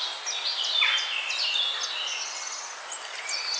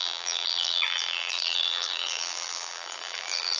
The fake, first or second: second